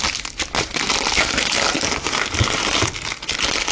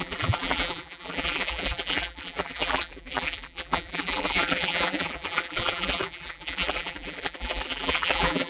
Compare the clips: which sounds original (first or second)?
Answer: first